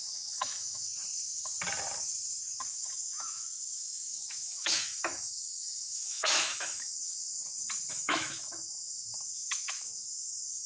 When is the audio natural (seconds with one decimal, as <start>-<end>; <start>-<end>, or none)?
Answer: 0.9-2.7; 7.4-7.9